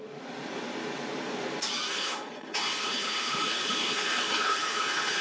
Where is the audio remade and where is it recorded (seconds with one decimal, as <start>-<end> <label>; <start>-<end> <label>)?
0.0-1.9 recorded; 1.9-5.2 remade